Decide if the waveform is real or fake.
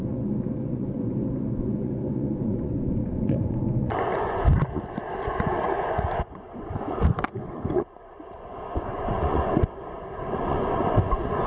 fake